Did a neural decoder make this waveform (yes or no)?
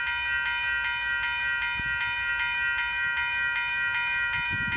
no